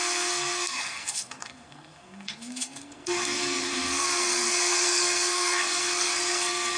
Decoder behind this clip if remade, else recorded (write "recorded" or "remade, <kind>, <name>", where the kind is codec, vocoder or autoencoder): remade, codec, SNAC